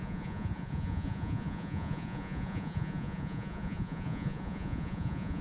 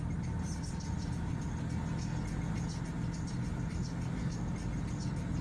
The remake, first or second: first